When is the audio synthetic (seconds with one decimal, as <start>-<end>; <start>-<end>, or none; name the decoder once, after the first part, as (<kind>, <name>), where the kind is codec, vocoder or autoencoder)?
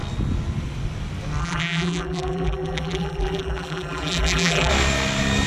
1.4-4.7 (vocoder, BigVGAN v2)